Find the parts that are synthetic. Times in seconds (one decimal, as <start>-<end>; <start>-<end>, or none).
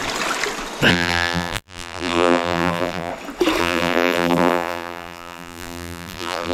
0.9-3.1; 3.6-6.5